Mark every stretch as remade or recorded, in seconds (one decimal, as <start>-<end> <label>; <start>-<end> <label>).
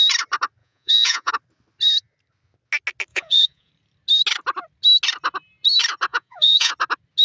0.0-0.6 recorded; 0.6-1.3 remade; 1.3-3.1 recorded; 3.1-3.7 remade; 3.7-6.1 recorded; 6.1-6.7 remade; 6.7-7.2 recorded